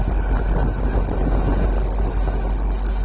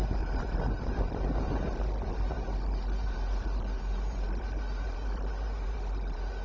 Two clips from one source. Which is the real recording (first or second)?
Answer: first